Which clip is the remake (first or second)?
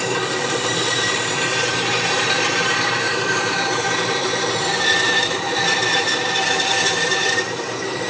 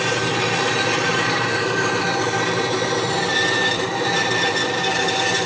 first